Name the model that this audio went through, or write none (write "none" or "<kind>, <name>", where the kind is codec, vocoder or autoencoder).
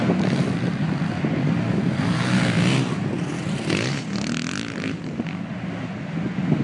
none